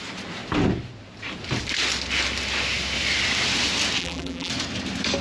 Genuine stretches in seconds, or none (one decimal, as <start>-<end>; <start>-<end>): 0.0-4.0; 4.5-5.2